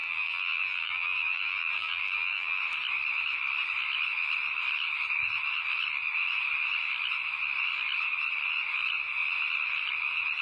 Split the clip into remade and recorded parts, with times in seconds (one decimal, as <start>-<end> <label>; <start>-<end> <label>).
0.0-2.6 remade; 2.6-10.4 recorded